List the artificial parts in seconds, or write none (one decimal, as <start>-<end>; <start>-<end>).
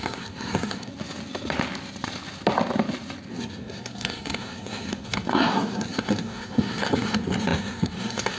0.0-0.9; 3.3-8.4